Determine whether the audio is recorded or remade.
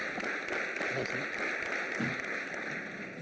recorded